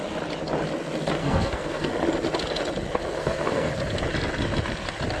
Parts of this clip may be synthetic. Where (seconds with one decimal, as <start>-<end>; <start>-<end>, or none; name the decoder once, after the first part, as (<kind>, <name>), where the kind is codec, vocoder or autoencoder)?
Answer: 1.2-1.9 (codec, SNAC); 3.2-3.7